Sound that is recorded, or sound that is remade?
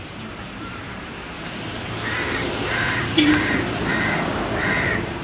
remade